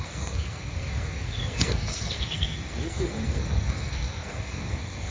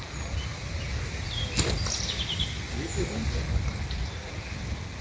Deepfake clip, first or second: first